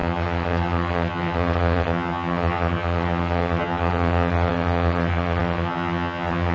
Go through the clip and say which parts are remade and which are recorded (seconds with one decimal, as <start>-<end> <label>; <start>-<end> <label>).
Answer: 0.0-6.5 remade

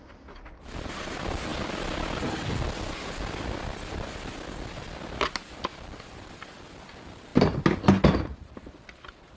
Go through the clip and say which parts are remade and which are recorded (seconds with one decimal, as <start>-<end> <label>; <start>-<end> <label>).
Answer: 0.0-9.4 recorded

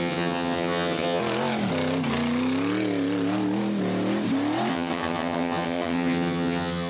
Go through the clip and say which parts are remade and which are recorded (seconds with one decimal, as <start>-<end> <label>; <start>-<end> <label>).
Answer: 0.0-1.2 remade; 1.2-4.7 recorded; 4.7-6.9 remade

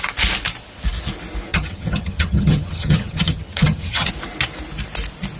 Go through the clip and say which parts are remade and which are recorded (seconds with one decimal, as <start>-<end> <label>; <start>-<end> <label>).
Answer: 0.0-1.5 recorded; 1.5-4.1 remade; 4.1-5.4 recorded

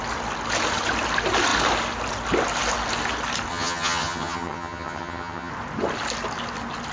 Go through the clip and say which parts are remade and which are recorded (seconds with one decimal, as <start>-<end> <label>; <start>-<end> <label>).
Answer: 0.0-3.5 recorded; 3.5-5.5 remade; 5.5-6.9 recorded